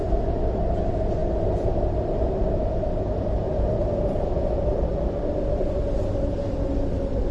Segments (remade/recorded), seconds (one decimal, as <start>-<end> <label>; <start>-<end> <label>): 0.0-7.3 recorded